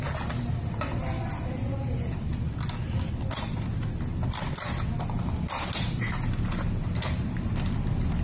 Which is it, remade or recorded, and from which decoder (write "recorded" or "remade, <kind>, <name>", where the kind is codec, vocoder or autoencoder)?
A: recorded